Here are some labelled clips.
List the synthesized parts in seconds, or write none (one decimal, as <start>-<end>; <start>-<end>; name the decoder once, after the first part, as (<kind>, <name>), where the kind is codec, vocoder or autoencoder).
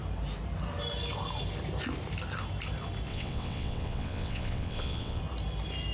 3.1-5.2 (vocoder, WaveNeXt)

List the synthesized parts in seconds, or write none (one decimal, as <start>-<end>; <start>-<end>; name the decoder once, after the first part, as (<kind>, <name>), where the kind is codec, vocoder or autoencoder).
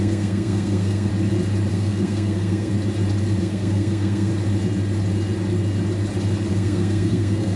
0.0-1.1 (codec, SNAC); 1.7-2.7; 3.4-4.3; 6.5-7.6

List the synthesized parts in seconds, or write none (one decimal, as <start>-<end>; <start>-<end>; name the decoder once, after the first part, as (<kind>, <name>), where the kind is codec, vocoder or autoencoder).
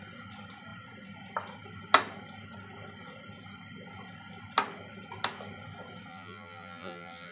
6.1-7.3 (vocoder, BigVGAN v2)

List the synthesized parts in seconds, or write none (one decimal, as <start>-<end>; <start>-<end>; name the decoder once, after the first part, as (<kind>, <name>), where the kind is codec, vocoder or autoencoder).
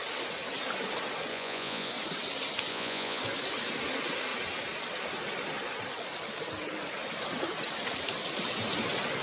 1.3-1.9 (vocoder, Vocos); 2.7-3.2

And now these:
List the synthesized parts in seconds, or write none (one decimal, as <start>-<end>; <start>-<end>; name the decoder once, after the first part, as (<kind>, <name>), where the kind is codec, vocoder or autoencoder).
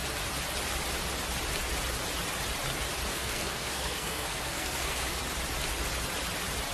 3.1-5.2 (codec, SNAC)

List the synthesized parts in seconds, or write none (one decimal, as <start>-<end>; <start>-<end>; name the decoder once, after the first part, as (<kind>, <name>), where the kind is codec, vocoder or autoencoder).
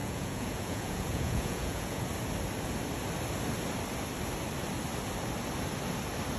0.0-2.0 (vocoder, Vocos)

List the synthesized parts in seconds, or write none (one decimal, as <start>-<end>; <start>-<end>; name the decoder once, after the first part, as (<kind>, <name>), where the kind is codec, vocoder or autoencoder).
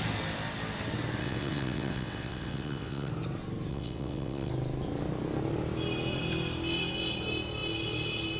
1.2-3.1 (vocoder, WaveNeXt); 3.7-4.5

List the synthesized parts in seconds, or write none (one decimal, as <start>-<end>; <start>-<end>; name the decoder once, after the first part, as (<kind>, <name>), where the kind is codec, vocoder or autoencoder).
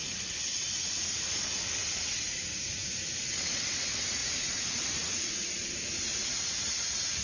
0.0-5.4 (vocoder, Vocos); 6.2-7.2